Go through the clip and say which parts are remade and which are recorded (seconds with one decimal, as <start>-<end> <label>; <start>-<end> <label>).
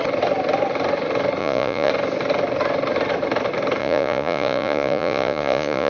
0.0-1.4 recorded; 1.4-1.9 remade; 1.9-3.8 recorded; 3.8-5.9 remade